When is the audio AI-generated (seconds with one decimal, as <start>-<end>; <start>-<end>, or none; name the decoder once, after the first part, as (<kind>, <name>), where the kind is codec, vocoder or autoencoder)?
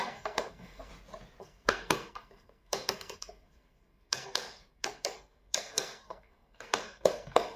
0.0-0.9 (codec, SNAC); 1.4-7.6